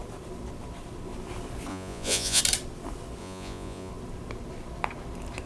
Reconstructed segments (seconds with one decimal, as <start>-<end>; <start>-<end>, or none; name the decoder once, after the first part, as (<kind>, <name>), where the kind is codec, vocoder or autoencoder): 1.7-2.4 (vocoder, Vocos); 3.2-3.9